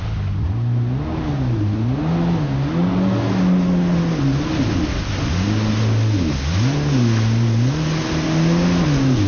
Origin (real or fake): real